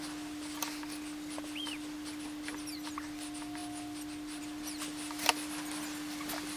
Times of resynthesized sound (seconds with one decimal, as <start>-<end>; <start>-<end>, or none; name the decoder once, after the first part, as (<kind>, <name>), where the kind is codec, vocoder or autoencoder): none